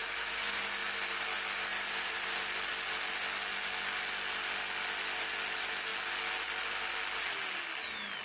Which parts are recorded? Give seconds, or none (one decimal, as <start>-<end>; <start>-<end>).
0.6-1.7; 2.4-8.2